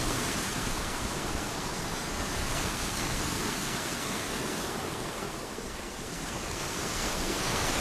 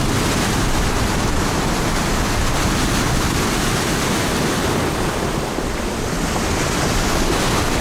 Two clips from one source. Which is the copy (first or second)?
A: first